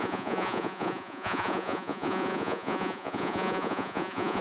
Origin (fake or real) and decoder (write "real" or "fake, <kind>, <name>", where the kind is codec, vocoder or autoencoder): fake, vocoder, Vocos